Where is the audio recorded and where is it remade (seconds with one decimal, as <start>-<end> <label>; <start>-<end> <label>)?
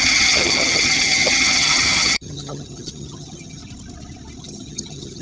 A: 0.0-3.6 remade; 3.6-4.4 recorded; 4.4-5.2 remade